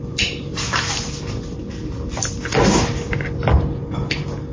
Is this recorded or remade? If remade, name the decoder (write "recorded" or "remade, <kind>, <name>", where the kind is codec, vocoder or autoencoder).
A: recorded